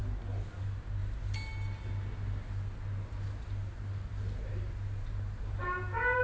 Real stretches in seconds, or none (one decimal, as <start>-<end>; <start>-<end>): 0.0-6.2